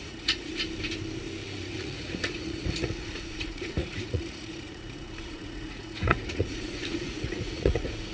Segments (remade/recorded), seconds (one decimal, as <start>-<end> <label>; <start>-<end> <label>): 0.0-0.5 remade; 0.5-1.6 recorded; 1.6-8.1 remade